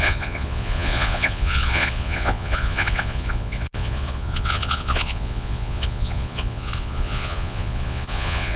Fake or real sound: fake